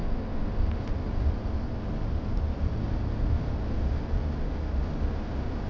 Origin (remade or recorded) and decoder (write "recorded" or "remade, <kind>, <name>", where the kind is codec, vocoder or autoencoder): recorded